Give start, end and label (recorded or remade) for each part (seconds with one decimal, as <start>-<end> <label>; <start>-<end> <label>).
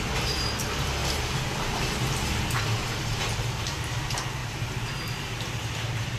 0.0-1.0 recorded; 1.0-2.4 remade; 2.4-4.4 recorded; 4.4-5.0 remade; 5.0-6.2 recorded